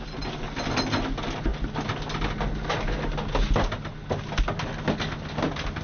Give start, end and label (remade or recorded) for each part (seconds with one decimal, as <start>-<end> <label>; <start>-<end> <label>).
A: 0.0-5.8 recorded